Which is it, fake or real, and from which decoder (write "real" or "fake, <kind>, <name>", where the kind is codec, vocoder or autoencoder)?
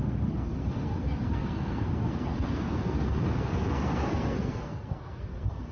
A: fake, codec, SNAC